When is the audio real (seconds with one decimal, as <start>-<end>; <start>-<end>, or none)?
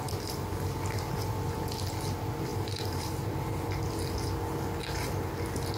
0.0-2.5; 3.3-5.8